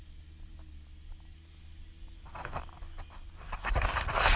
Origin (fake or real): real